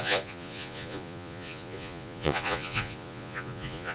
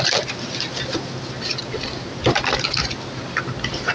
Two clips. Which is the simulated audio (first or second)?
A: first